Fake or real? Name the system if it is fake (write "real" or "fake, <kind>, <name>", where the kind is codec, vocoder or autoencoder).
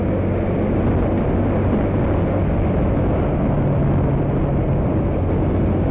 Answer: real